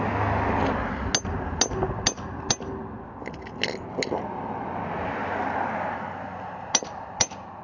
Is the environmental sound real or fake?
real